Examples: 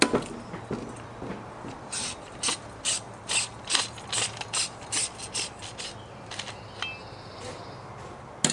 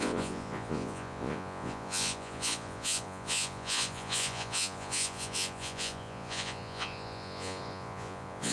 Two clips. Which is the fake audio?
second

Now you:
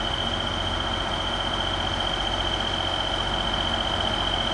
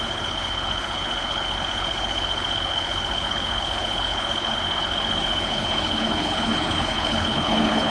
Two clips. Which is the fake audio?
second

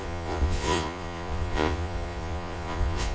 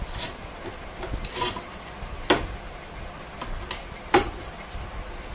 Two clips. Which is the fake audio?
first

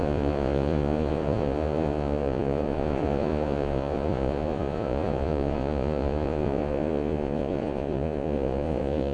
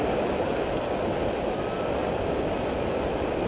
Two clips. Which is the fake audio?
first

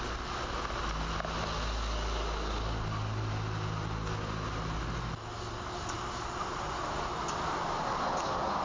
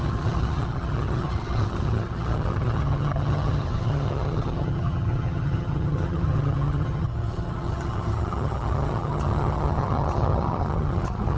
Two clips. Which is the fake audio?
second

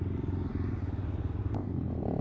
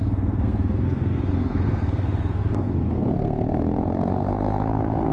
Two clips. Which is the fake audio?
second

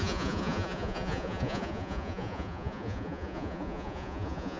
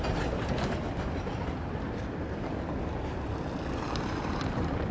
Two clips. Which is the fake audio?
first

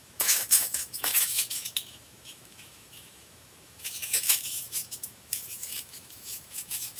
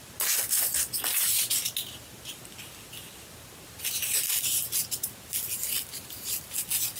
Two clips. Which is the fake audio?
first